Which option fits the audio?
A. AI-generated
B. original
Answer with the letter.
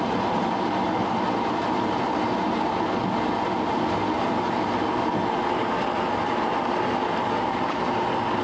B